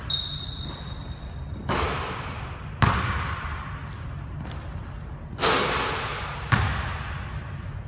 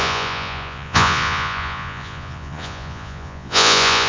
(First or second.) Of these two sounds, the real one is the first